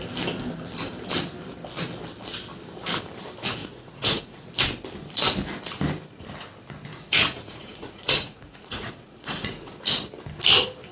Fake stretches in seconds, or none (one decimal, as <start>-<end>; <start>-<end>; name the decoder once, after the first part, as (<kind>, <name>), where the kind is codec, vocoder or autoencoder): 3.6-4.5 (vocoder, Vocos); 6.9-9.7